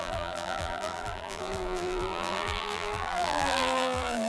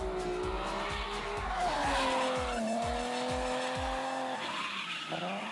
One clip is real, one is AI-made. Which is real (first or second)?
second